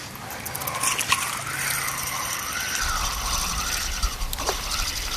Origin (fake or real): real